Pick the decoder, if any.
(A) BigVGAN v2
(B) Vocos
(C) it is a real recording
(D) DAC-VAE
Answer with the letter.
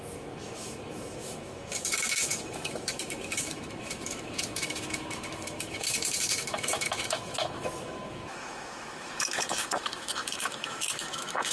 D